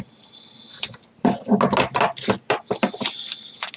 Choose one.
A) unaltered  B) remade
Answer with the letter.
A